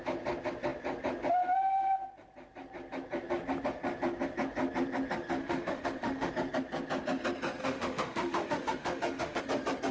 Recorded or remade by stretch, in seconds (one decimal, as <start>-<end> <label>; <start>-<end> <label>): 0.0-5.4 recorded; 5.4-6.3 remade; 6.3-7.6 recorded; 7.6-9.4 remade; 9.4-9.9 recorded